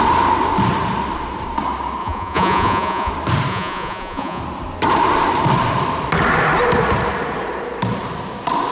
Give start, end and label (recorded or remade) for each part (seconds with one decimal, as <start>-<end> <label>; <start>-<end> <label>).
0.0-2.0 recorded; 2.0-3.1 remade; 3.1-3.5 recorded; 3.5-4.4 remade; 4.4-8.7 recorded